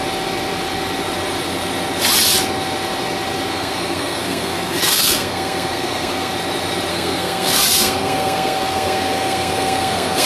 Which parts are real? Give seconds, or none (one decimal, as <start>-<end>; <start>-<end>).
0.0-3.5; 6.3-6.9